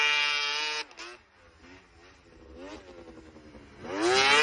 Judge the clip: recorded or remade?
recorded